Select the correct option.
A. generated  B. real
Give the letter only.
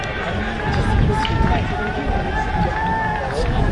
B